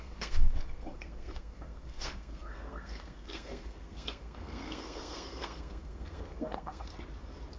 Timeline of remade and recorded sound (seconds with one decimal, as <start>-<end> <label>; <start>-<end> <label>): 0.0-6.9 remade; 6.9-7.6 recorded